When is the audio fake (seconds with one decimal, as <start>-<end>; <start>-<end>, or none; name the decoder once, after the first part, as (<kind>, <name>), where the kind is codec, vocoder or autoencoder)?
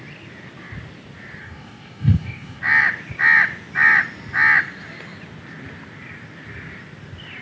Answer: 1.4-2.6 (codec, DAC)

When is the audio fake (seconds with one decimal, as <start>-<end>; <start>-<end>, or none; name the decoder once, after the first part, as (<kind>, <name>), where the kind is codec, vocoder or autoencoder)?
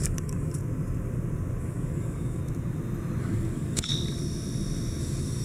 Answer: 0.0-0.6 (codec, DAC); 1.6-2.4; 3.2-3.9; 5.0-5.4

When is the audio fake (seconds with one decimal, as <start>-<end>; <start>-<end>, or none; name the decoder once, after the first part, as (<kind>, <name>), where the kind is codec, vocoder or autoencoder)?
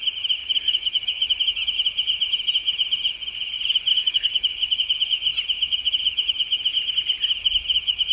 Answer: 0.4-1.4 (codec, DAC); 3.9-4.8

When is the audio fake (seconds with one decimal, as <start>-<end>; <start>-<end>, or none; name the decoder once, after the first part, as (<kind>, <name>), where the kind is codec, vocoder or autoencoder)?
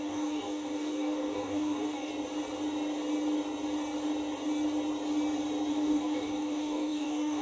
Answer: 0.0-2.1 (codec, DAC); 5.7-7.4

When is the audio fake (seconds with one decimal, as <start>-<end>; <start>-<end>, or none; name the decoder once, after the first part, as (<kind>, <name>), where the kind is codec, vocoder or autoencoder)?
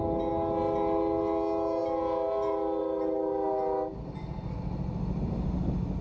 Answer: none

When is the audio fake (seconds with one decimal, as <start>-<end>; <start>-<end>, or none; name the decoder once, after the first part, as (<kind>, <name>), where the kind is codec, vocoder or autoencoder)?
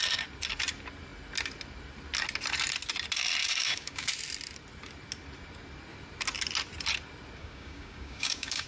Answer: 3.4-4.1 (codec, DAC); 7.4-8.7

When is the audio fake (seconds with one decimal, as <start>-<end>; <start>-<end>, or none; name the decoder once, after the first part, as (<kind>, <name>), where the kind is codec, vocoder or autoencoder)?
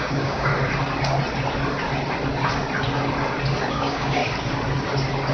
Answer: 0.0-0.5 (codec, DAC); 3.7-4.2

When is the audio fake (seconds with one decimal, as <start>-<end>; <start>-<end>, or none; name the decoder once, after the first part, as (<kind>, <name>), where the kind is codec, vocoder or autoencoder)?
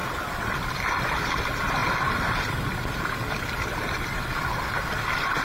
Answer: none